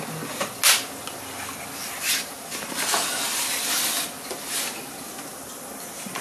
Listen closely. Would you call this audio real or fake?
real